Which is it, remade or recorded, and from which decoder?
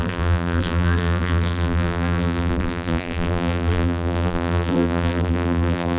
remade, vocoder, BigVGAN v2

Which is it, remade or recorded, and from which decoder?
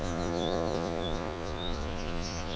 remade, vocoder, Vocos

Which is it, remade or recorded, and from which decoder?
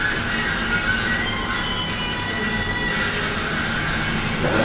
recorded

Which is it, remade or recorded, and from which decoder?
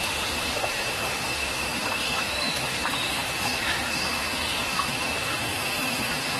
remade, autoencoder, DAC-VAE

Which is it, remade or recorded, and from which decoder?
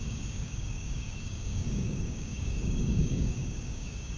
remade, codec, DAC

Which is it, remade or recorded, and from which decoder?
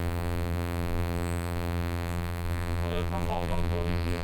remade, vocoder, BigVGAN v2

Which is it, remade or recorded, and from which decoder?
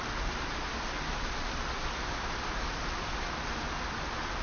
recorded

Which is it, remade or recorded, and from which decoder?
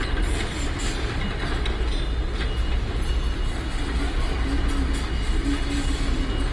recorded